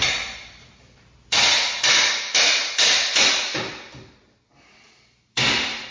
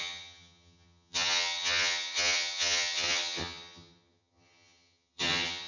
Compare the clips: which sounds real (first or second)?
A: first